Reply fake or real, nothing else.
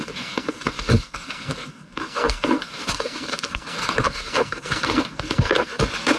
fake